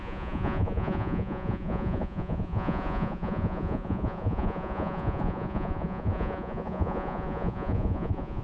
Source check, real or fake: fake